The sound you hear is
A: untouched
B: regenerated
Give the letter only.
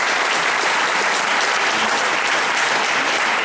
A